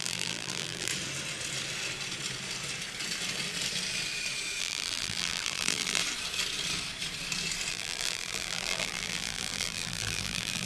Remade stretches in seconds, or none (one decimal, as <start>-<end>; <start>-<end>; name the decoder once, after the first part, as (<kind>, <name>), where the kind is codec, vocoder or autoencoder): 0.0-0.9 (vocoder, BigVGAN v2); 4.6-6.0; 7.7-10.7